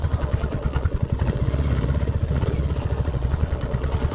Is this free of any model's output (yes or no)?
no